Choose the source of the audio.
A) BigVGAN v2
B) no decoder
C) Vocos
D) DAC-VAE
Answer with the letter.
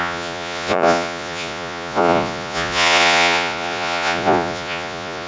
C